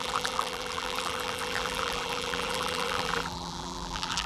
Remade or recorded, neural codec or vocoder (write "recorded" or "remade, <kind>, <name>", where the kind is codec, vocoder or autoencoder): remade, vocoder, BigVGAN v2